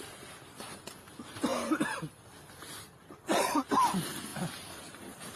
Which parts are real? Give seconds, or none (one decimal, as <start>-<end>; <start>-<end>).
0.0-5.4